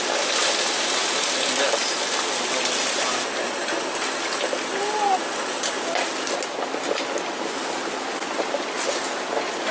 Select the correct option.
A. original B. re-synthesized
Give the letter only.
A